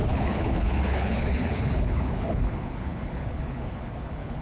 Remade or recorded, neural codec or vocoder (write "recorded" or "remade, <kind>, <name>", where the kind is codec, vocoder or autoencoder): remade, codec, HILCodec